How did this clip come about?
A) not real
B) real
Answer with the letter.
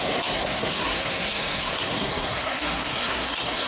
A